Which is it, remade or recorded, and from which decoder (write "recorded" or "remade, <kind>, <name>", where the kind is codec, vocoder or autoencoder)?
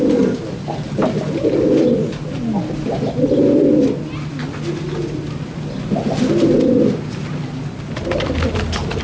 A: recorded